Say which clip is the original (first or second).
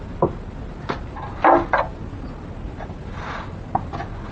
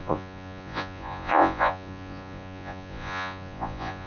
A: first